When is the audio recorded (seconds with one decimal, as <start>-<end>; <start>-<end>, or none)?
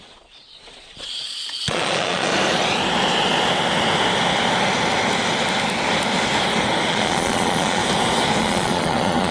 2.3-6.9; 7.8-8.4